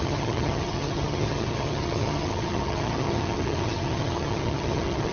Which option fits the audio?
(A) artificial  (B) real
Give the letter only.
A